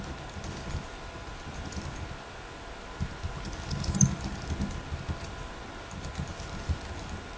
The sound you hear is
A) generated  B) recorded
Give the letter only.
B